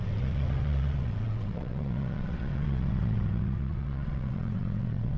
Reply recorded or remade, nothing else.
remade